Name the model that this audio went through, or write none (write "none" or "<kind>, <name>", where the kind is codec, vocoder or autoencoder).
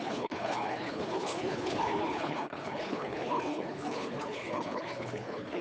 codec, HILCodec